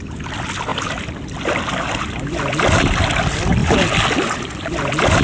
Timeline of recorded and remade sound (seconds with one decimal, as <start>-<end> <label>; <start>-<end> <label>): 0.0-5.2 recorded